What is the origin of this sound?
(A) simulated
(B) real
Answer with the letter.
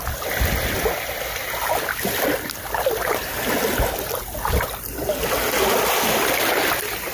B